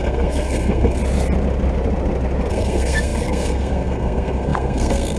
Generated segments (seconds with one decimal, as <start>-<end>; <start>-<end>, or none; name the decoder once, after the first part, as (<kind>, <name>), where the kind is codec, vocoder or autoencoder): 0.0-1.0 (codec, SNAC); 2.5-5.2